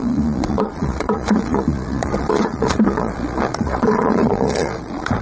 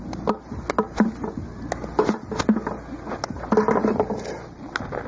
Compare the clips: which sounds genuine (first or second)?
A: second